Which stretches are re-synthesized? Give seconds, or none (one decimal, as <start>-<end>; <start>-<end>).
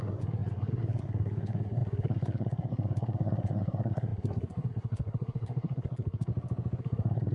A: 0.0-6.3; 6.8-7.3